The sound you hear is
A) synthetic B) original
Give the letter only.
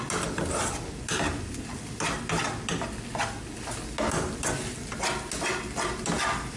B